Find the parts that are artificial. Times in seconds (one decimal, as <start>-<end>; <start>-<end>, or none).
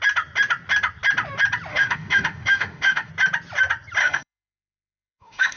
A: 1.7-3.1; 4.0-5.6